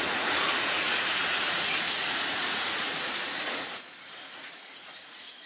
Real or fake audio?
fake